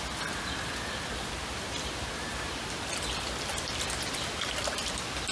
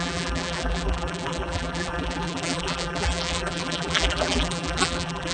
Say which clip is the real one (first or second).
first